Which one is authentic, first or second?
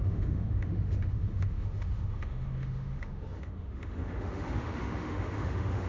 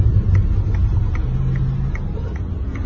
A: second